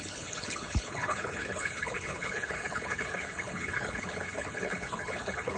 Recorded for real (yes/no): no